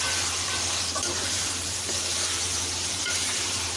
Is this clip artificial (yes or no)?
yes